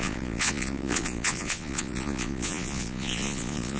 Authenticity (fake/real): fake